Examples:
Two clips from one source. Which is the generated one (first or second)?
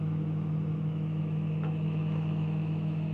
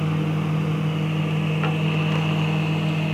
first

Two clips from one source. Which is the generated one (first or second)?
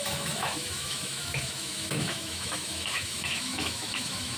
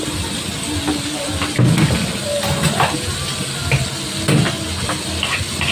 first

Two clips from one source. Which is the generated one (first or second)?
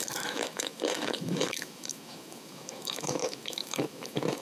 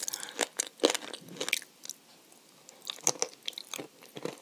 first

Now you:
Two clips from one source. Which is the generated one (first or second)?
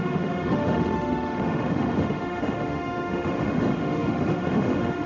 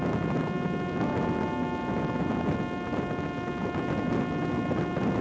first